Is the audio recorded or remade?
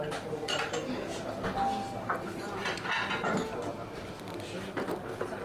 recorded